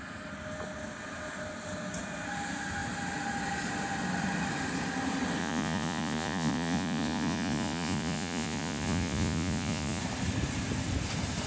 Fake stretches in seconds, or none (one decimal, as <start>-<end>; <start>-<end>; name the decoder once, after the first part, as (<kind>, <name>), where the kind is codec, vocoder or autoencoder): 5.4-10.0 (vocoder, Vocos)